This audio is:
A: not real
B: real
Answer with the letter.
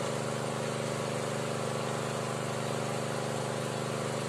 B